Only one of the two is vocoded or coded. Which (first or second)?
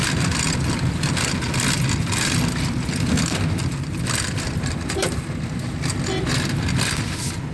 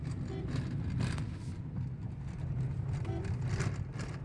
first